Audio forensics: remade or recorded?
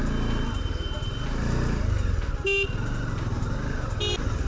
recorded